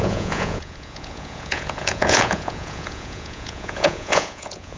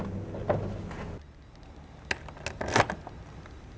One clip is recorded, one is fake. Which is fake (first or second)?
first